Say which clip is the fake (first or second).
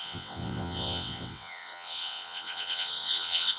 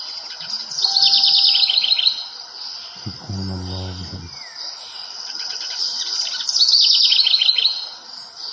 first